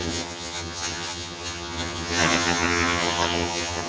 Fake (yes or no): yes